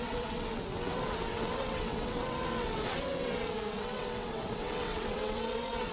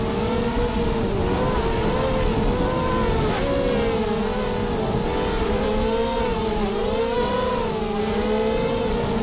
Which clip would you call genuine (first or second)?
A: second